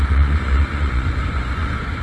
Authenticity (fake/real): fake